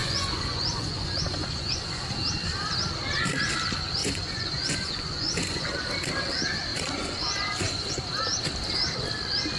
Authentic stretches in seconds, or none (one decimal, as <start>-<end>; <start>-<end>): 2.0-4.0; 5.9-6.7; 8.0-9.6